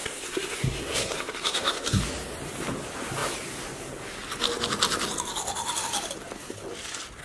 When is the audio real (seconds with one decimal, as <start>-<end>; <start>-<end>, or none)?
2.0-7.2